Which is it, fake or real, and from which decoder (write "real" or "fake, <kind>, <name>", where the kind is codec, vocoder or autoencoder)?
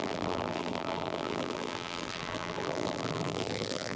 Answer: fake, vocoder, BigVGAN v2